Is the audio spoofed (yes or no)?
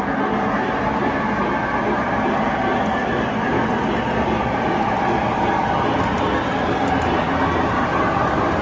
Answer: no